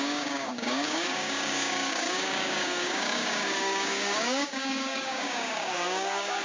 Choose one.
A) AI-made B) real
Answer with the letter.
A